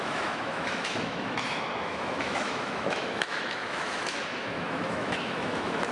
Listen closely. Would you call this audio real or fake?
fake